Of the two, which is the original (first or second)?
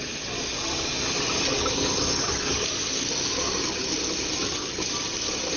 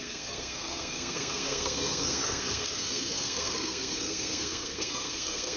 first